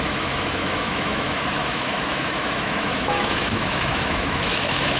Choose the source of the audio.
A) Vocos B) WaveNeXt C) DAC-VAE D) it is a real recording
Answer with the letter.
C